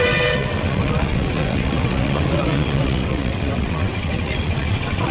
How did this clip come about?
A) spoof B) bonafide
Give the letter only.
A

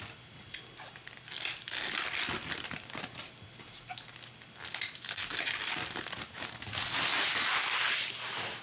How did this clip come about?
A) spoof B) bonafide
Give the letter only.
B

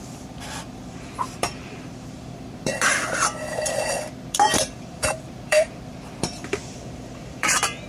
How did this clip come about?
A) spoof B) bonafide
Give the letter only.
A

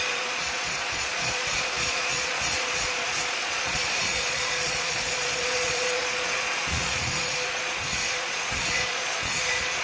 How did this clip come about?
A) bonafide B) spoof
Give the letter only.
B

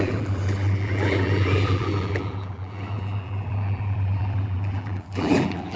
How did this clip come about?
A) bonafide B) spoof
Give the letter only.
B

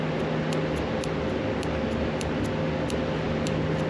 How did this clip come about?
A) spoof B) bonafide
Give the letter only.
B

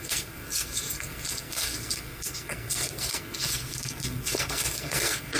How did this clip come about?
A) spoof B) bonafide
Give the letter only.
A